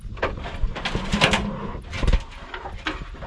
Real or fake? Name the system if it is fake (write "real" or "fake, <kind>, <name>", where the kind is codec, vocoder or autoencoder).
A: real